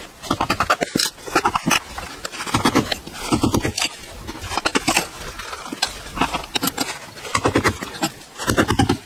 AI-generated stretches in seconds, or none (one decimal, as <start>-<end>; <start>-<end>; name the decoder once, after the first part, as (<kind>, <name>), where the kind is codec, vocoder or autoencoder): none